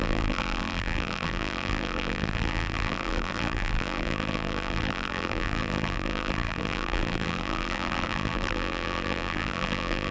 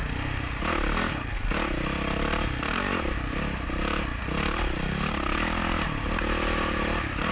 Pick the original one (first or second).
second